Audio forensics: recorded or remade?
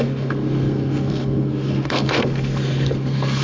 remade